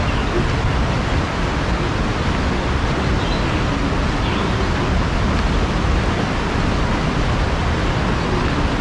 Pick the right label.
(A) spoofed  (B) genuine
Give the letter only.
B